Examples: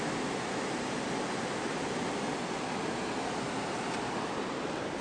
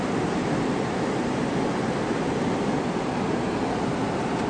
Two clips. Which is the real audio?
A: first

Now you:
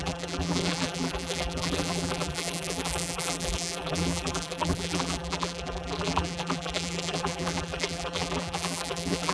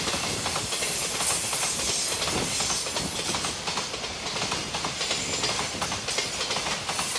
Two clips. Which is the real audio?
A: second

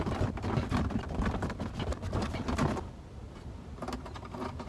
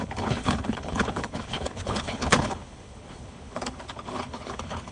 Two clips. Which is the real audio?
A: first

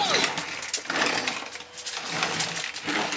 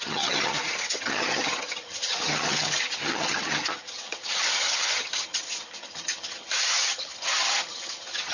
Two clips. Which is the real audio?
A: first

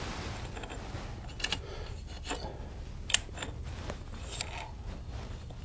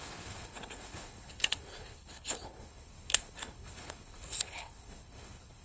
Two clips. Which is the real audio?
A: first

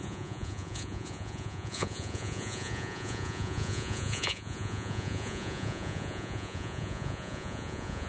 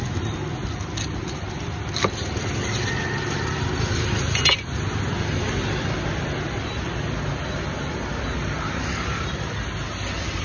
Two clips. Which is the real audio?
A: second